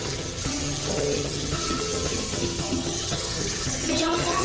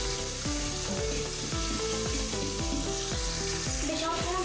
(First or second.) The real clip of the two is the second